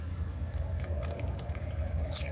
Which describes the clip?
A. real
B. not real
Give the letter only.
B